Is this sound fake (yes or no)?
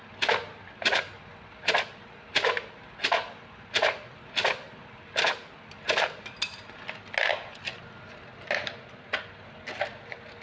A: no